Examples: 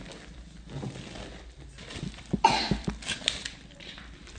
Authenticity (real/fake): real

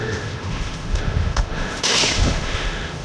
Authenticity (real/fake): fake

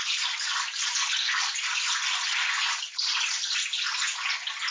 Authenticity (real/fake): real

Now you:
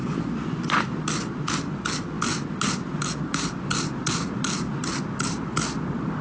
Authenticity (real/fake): real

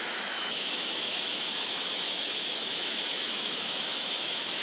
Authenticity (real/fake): fake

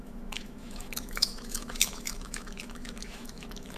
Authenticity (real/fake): fake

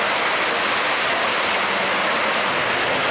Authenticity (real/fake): real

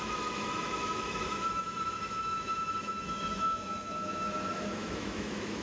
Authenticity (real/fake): fake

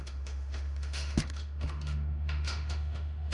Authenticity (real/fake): fake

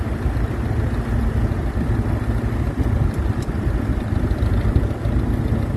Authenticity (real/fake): real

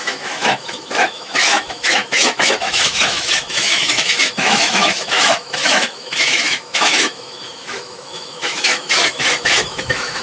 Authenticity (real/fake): fake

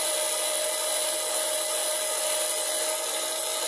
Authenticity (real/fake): real